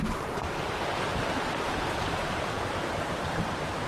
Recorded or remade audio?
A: remade